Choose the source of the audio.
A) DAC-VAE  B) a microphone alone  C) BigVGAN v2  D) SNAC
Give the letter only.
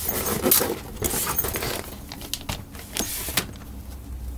B